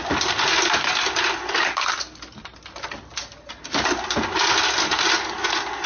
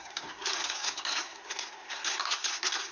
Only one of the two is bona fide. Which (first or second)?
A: first